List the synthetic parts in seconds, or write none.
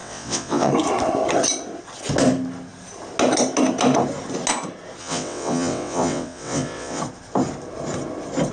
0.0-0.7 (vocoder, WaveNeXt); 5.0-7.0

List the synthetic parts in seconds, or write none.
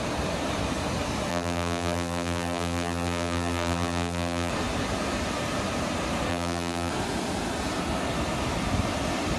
1.3-4.5 (vocoder, BigVGAN v2); 6.3-6.9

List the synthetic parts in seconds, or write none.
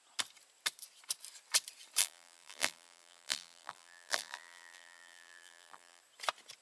2.0-6.0 (vocoder, BigVGAN v2)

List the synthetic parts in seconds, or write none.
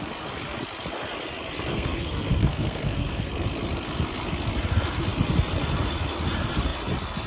1.7-3.3 (codec, SNAC)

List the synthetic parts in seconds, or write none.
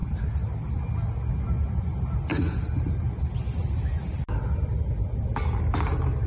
none